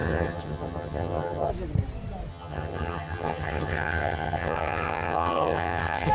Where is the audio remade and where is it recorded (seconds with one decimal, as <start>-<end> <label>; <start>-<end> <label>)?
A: 0.0-1.5 remade; 1.5-2.3 recorded; 2.3-6.1 remade